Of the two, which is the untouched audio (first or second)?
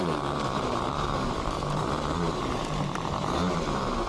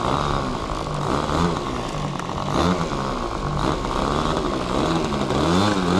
second